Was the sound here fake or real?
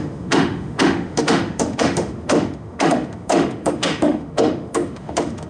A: fake